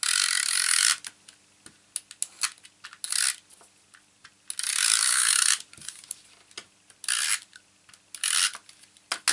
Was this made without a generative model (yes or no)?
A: yes